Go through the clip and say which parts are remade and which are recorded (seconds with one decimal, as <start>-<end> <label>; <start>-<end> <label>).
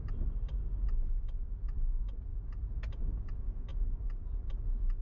0.0-5.0 recorded